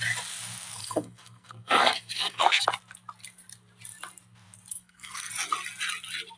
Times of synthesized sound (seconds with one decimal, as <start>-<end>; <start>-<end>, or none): 0.8-2.6; 4.7-5.3